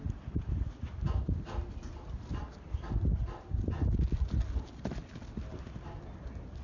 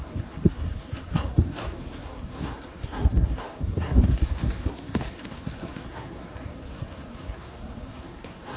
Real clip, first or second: first